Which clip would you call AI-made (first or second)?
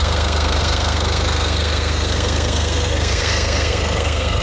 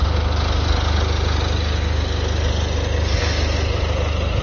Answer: first